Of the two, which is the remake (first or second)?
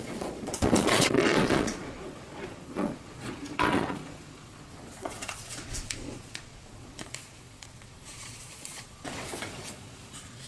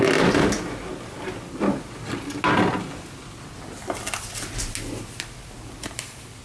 first